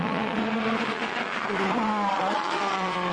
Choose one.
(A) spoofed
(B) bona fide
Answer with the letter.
A